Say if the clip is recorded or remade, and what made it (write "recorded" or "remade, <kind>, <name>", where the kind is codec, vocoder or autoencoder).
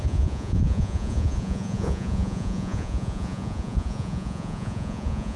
remade, vocoder, Vocos